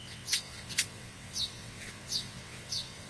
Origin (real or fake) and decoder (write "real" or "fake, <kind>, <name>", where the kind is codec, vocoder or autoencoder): fake, vocoder, WaveNeXt